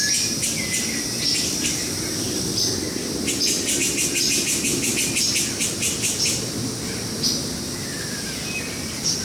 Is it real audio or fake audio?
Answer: real